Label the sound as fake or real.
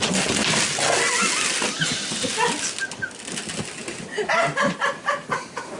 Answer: real